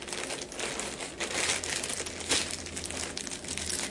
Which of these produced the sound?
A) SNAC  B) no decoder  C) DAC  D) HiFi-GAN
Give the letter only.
B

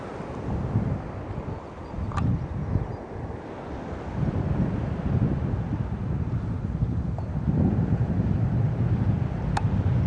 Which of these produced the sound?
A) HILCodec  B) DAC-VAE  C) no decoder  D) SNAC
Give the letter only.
C